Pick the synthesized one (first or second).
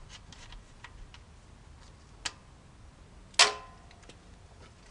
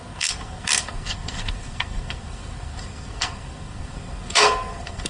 second